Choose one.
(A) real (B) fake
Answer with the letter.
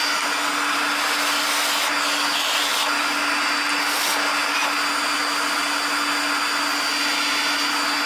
A